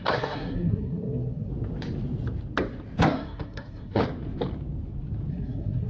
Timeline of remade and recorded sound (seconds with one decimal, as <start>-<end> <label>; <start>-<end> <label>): 0.0-1.5 remade; 1.5-3.0 recorded; 3.0-4.0 remade; 4.0-5.3 recorded; 5.3-5.9 remade